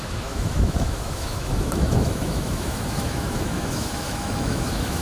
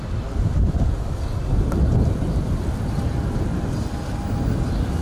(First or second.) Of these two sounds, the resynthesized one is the first